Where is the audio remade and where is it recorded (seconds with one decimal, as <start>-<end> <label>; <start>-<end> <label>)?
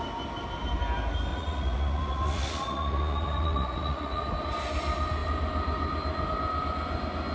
0.0-1.3 recorded; 1.3-4.2 remade; 4.2-7.3 recorded